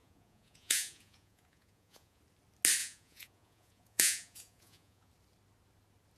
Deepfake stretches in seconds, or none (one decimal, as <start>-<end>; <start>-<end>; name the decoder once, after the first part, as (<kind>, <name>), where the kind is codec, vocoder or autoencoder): 0.0-2.2 (vocoder, Vocos); 2.8-5.1